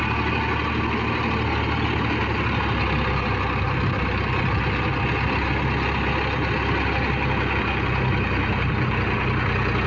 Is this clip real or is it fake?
real